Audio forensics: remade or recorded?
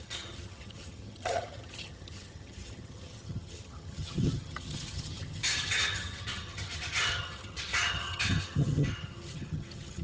remade